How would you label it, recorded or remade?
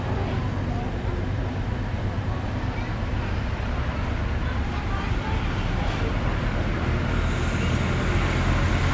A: recorded